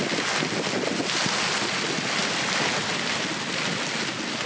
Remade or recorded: recorded